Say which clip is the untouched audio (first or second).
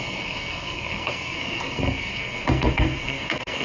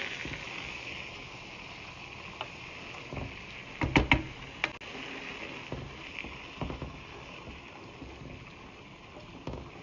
second